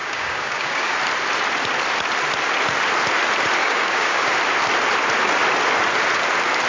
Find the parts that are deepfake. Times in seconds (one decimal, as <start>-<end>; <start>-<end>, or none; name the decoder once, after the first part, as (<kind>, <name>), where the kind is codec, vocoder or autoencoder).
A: 0.0-1.0 (codec, DAC); 3.6-4.3